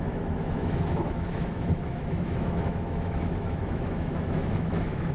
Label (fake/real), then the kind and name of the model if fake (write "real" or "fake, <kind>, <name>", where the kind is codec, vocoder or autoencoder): fake, autoencoder, DAC-VAE